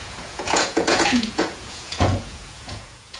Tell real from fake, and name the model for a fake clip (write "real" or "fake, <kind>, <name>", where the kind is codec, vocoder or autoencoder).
fake, vocoder, Vocos